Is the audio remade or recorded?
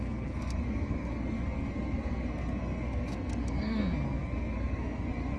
remade